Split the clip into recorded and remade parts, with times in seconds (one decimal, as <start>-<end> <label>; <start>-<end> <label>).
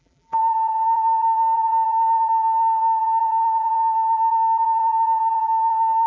0.0-6.1 remade